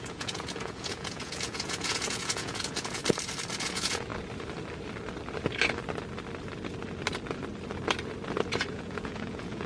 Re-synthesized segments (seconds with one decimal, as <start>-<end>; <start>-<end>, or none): 0.0-3.0; 3.6-4.1; 8.7-9.7